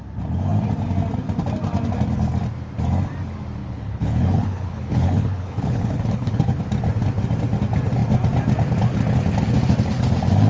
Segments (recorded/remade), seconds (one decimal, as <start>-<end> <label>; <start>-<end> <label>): 0.0-3.6 recorded; 3.6-6.6 remade; 6.6-10.5 recorded